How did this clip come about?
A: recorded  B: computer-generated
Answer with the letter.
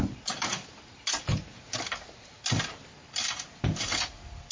A